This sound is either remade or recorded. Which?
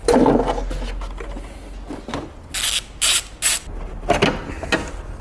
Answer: recorded